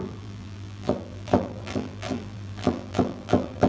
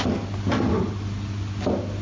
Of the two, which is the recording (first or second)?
second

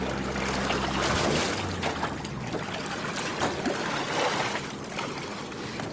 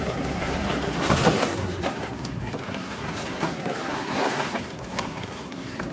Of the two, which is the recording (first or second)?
first